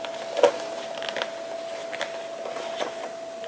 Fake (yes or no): no